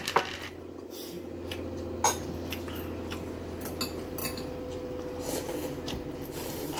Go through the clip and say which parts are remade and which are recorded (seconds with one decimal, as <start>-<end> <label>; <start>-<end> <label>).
0.0-6.8 recorded